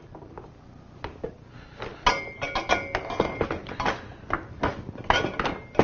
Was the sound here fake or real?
real